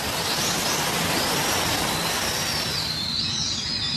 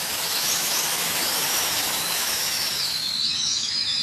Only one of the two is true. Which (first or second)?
first